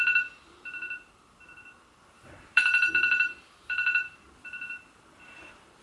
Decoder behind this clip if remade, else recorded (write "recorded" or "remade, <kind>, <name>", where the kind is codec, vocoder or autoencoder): remade, vocoder, BigVGAN v2